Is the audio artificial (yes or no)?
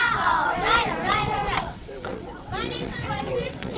yes